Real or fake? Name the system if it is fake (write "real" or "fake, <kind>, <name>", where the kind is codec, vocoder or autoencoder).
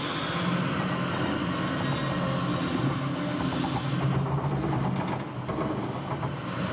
real